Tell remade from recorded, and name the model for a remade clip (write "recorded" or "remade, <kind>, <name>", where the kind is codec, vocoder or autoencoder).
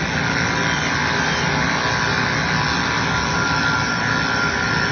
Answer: recorded